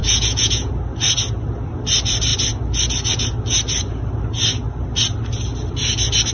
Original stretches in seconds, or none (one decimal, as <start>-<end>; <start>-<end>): 0.7-6.3